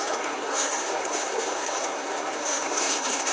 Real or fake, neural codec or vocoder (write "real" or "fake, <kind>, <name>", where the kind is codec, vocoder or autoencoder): fake, codec, SNAC